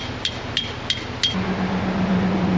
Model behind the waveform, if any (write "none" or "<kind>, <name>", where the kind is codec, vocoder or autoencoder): none